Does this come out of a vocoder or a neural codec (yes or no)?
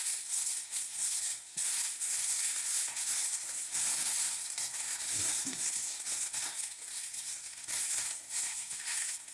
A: yes